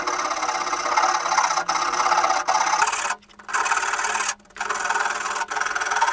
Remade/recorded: recorded